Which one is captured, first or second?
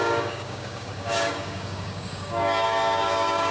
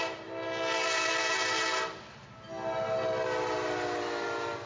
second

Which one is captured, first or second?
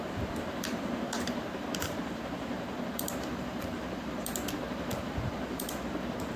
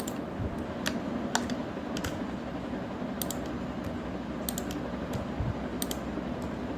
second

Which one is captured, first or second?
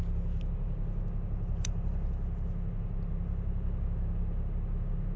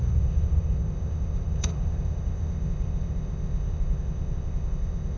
first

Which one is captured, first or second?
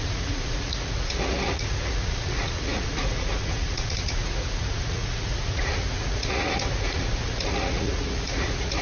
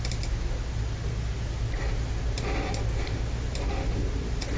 second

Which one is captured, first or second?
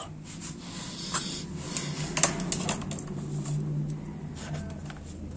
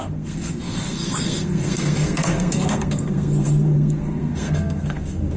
first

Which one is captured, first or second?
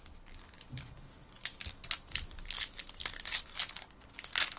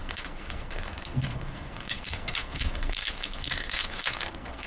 first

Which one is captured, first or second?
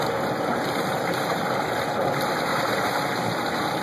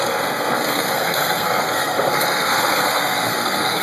first